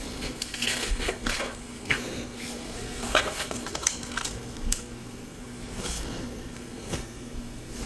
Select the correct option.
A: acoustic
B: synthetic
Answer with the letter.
B